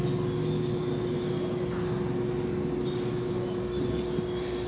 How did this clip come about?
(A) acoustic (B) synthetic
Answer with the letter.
A